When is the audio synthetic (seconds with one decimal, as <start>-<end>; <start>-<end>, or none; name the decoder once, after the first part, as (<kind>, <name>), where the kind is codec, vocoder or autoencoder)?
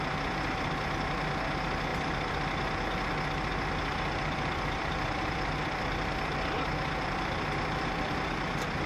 1.9-2.5 (vocoder, BigVGAN v2); 3.5-8.1